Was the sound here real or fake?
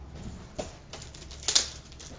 real